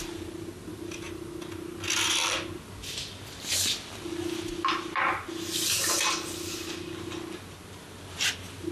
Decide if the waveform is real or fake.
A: real